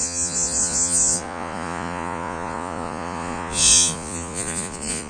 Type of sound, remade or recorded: remade